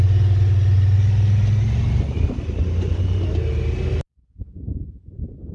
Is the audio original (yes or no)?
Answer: yes